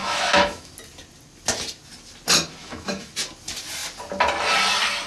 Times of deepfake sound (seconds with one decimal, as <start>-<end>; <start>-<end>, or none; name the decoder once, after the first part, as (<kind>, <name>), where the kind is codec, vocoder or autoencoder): 0.0-0.7 (autoencoder, DAC-VAE); 2.6-3.1